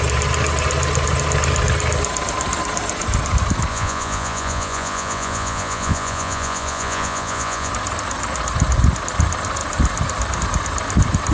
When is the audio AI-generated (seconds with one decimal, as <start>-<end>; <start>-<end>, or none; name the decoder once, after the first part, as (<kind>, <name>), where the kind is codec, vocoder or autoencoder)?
3.7-7.7 (vocoder, Vocos)